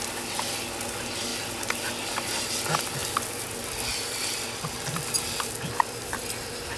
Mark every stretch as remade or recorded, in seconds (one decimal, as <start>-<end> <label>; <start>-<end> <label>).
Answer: 0.0-6.8 recorded